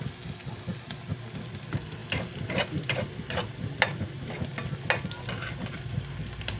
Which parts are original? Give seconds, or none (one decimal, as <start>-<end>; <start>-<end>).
0.0-6.6